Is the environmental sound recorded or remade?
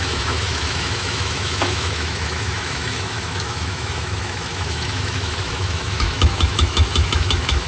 remade